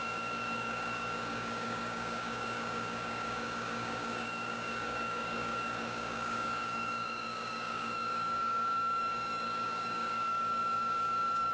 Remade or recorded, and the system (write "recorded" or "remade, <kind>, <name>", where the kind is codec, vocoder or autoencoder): remade, codec, DAC